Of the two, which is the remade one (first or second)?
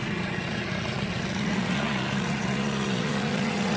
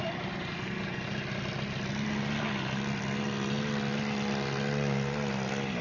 first